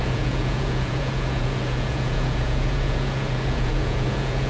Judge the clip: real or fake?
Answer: fake